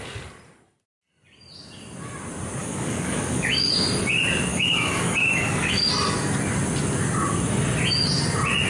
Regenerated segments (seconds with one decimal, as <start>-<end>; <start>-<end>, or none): 2.6-3.7; 4.5-5.9